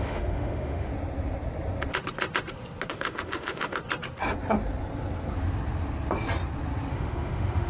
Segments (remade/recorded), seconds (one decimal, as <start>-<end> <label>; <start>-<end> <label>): 0.0-0.9 remade; 0.9-2.9 recorded; 2.9-3.8 remade; 3.8-6.9 recorded; 6.9-7.7 remade